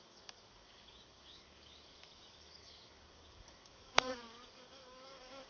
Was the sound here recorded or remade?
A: remade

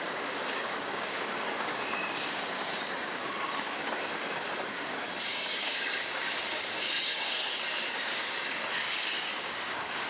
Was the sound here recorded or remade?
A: remade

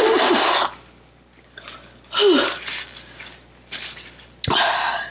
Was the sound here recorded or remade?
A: recorded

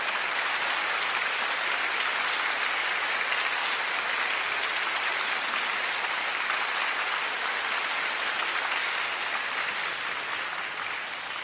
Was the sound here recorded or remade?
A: recorded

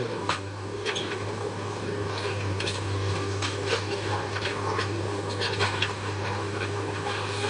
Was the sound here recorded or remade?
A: remade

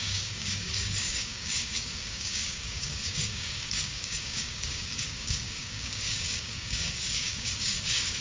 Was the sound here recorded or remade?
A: remade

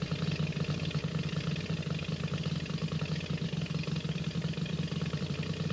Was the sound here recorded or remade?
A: recorded